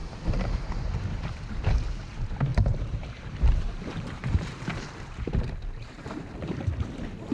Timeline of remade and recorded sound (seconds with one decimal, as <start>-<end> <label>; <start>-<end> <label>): 0.0-1.4 remade; 1.4-2.5 recorded; 2.5-6.3 remade; 6.3-7.3 recorded

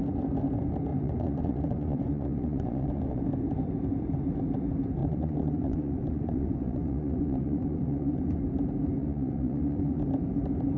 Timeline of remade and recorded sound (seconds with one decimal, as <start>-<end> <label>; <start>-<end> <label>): 0.0-0.9 recorded; 0.9-3.2 remade; 3.2-5.0 recorded; 5.0-8.4 remade; 8.4-9.0 recorded; 9.0-10.0 remade; 10.0-10.8 recorded

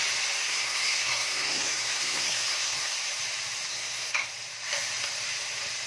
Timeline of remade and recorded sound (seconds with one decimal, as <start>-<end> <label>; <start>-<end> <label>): 0.0-0.4 recorded; 0.4-2.9 remade; 2.9-3.7 recorded; 3.7-4.3 remade; 4.3-5.9 recorded

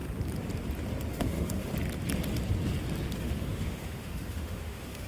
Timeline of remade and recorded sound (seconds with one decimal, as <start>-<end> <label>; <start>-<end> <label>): 0.0-1.1 recorded; 1.1-1.7 remade; 1.7-3.2 recorded; 3.2-5.1 remade

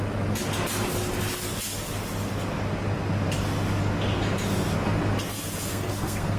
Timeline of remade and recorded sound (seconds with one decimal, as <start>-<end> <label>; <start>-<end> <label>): 0.0-5.7 recorded; 5.7-6.4 remade

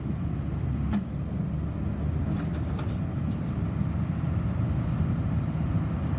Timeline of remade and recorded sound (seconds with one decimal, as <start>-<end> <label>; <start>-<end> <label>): 0.0-2.5 recorded; 2.5-6.2 remade

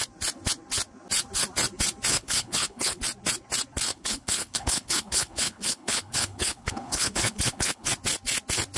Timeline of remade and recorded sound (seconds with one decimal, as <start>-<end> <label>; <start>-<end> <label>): 0.0-2.1 recorded; 2.1-3.0 remade; 3.0-3.9 recorded; 3.9-7.9 remade; 7.9-8.8 recorded

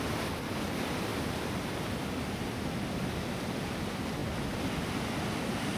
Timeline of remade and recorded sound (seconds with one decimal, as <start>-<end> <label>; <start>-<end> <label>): 0.0-5.8 recorded